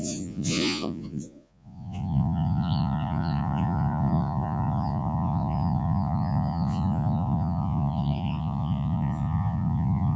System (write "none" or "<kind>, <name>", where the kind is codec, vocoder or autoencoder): vocoder, Vocos